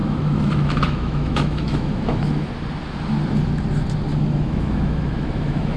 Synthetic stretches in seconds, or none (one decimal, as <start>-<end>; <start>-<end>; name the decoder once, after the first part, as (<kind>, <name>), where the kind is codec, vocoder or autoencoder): 0.0-2.5 (autoencoder, DAC-VAE); 4.1-5.8